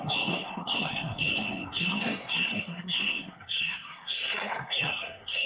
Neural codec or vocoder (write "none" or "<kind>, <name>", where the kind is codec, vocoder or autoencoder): codec, SNAC